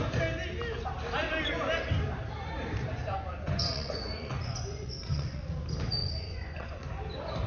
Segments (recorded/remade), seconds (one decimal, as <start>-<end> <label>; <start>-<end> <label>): 0.0-2.8 recorded; 2.8-5.4 remade; 5.4-6.0 recorded; 6.0-6.9 remade; 6.9-7.5 recorded